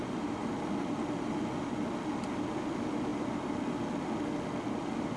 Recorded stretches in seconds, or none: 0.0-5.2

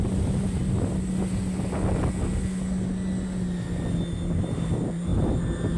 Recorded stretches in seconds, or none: 0.6-4.1

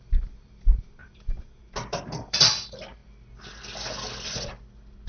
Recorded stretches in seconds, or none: 3.0-5.1

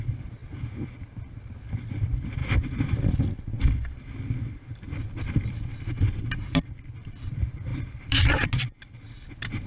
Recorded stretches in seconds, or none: 0.0-2.4; 3.2-5.7; 6.6-7.7; 8.5-9.7

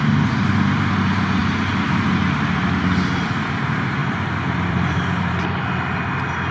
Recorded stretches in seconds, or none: 0.0-4.0; 5.7-6.5

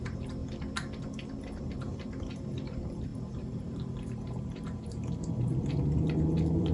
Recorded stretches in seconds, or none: 0.4-1.6